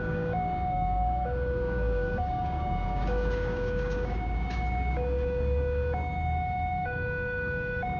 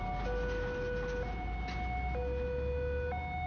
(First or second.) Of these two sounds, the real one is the second